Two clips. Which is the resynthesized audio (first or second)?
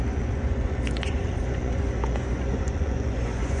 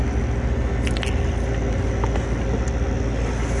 first